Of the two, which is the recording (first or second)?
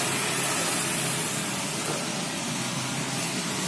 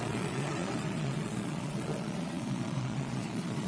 first